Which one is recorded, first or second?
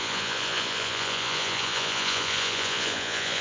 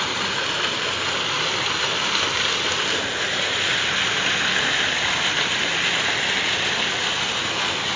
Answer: second